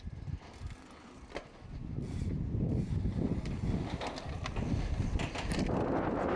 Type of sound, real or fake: real